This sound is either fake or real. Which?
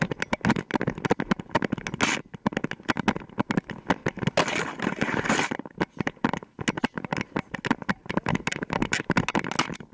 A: real